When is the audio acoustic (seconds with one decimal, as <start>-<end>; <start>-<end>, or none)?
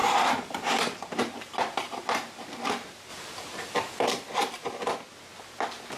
2.7-3.1; 4.0-6.0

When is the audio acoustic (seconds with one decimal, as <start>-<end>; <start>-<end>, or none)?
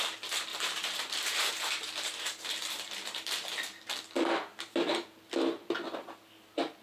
0.0-0.5; 3.8-6.8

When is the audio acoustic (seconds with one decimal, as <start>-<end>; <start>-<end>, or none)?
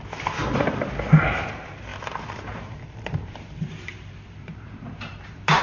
0.0-1.9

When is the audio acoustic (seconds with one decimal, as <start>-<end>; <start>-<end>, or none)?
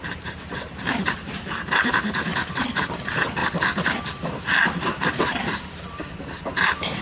none